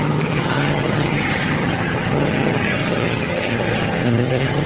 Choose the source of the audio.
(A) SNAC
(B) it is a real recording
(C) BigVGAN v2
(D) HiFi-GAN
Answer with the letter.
D